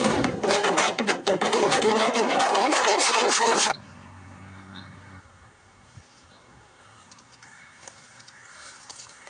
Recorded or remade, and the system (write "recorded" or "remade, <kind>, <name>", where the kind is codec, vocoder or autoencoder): remade, codec, SNAC